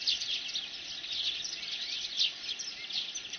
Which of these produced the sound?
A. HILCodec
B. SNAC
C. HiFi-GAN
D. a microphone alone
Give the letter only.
D